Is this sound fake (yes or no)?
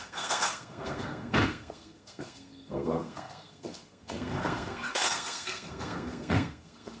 yes